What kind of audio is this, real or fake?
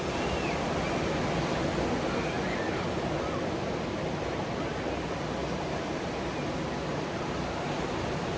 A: real